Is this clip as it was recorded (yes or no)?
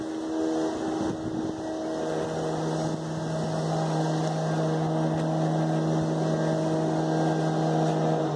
yes